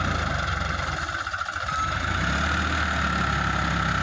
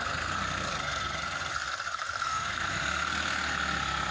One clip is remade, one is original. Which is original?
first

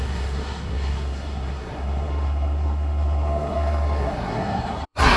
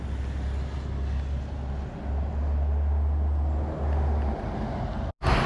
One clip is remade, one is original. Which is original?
second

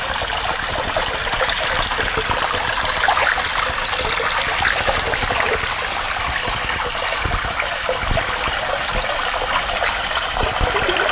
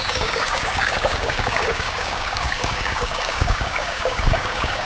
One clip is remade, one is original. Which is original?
first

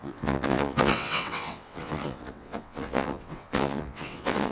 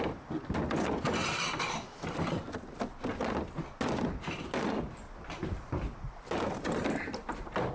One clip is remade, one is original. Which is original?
second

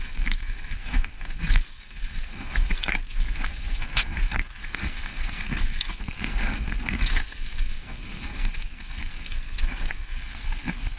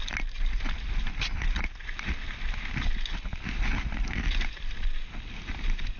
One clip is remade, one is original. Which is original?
second